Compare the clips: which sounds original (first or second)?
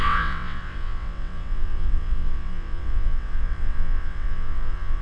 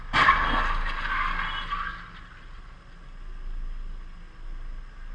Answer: second